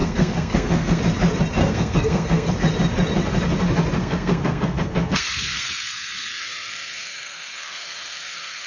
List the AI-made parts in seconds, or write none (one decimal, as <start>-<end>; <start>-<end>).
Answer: 0.0-1.0; 1.6-2.5; 4.0-8.7